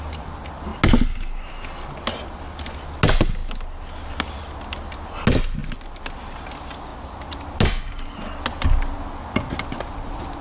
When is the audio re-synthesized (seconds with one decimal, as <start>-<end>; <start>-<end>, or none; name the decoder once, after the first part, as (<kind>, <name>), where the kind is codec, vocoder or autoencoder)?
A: none